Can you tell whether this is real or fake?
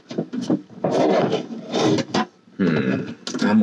real